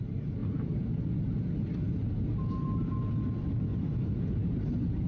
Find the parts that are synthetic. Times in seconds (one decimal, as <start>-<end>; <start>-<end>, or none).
none